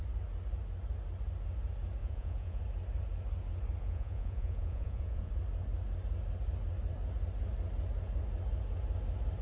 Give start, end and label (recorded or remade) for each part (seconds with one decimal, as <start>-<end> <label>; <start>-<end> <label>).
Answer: 0.0-2.0 recorded; 2.0-2.6 remade; 2.6-3.8 recorded; 3.8-5.3 remade; 5.3-9.4 recorded